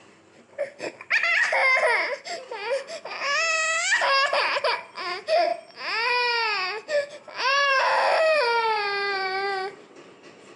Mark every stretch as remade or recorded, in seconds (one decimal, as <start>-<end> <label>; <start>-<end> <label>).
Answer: 0.0-1.6 remade; 1.6-4.4 recorded; 4.4-5.5 remade; 5.5-7.1 recorded; 7.1-10.6 remade